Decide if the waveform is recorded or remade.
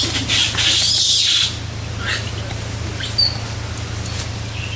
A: recorded